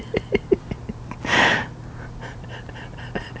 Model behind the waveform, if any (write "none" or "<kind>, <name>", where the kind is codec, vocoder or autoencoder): none